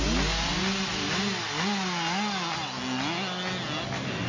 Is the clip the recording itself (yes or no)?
yes